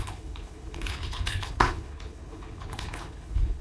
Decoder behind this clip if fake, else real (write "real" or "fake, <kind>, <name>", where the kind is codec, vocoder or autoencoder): fake, codec, HILCodec